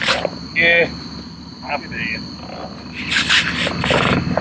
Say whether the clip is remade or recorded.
recorded